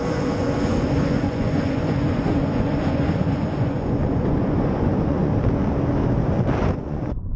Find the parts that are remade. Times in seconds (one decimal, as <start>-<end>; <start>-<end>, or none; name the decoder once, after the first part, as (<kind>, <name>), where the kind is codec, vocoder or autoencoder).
0.0-5.3 (vocoder, Vocos); 6.6-7.4